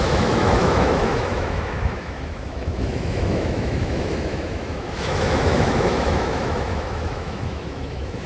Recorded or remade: remade